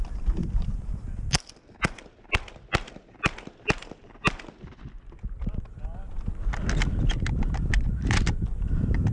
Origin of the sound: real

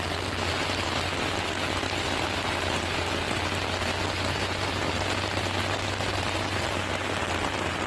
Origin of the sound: real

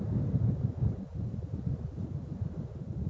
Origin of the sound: real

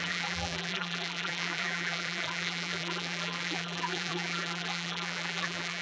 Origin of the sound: fake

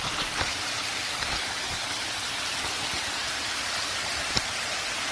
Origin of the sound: fake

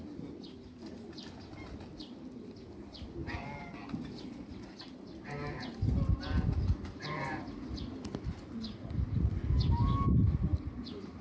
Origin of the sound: real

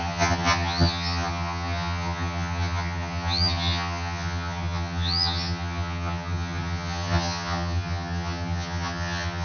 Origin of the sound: fake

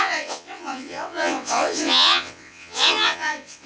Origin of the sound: fake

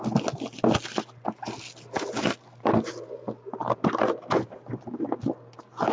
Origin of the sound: real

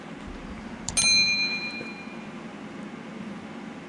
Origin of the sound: real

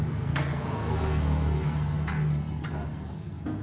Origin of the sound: fake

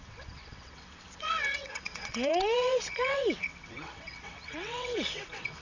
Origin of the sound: fake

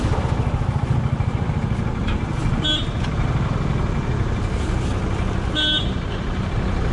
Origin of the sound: real